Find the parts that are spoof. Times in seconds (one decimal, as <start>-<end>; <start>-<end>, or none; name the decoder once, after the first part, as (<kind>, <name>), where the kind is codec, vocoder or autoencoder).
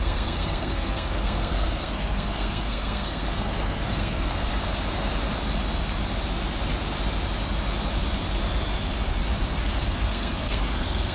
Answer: 0.0-4.5 (codec, SNAC); 9.8-11.1